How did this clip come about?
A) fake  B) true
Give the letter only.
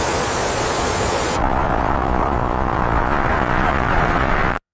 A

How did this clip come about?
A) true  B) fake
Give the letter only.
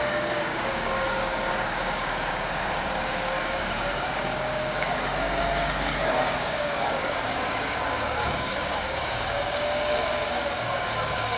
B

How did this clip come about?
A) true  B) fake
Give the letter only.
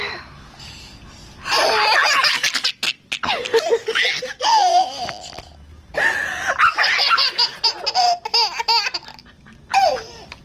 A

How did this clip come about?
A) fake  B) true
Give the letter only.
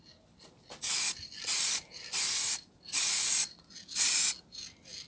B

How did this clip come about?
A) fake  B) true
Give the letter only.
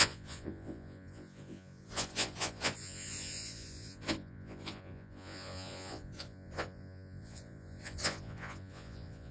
A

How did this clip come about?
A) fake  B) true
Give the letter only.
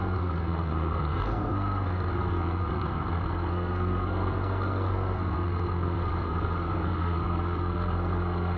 A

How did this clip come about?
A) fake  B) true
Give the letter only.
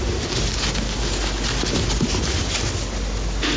B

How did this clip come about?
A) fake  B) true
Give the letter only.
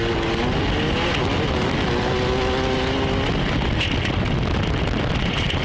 B